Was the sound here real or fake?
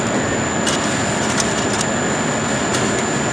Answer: real